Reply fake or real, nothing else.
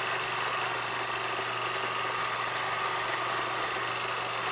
real